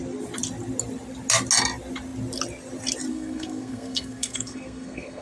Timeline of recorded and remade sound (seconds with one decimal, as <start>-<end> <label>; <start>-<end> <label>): 0.0-3.1 recorded; 3.1-5.2 remade